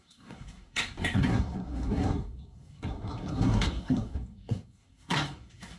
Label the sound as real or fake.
fake